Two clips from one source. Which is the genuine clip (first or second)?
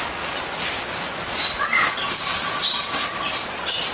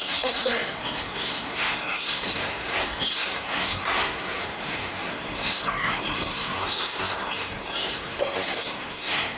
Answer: first